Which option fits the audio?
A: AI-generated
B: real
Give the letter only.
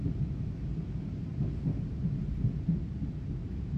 B